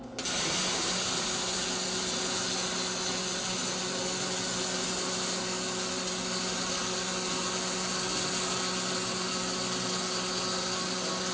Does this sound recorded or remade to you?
recorded